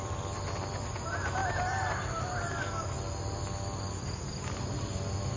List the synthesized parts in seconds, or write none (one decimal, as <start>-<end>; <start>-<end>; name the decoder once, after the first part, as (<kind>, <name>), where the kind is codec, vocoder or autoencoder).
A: none